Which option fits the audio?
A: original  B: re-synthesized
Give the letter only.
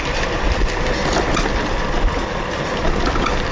A